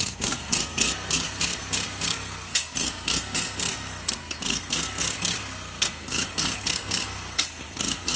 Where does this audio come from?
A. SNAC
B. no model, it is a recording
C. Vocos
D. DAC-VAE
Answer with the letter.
A